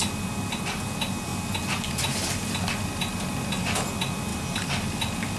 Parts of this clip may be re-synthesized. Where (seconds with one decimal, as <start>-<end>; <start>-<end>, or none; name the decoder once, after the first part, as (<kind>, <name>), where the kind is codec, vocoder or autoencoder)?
4.3-5.0 (vocoder, BigVGAN v2)